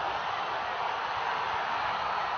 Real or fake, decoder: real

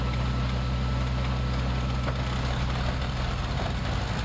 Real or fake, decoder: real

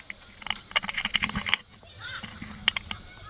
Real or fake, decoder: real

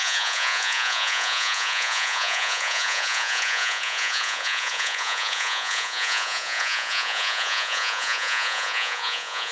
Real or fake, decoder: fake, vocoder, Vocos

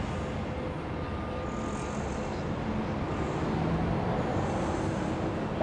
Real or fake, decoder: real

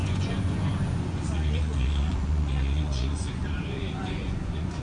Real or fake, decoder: fake, vocoder, Vocos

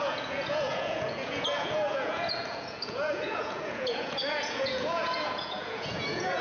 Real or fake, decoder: fake, vocoder, Vocos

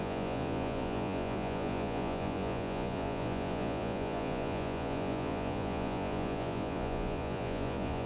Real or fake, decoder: fake, vocoder, Vocos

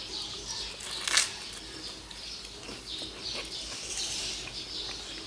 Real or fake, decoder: real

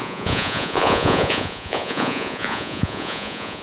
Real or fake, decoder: fake, vocoder, Vocos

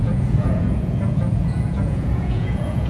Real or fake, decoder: fake, vocoder, Vocos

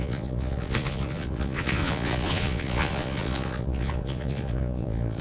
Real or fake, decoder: fake, vocoder, Vocos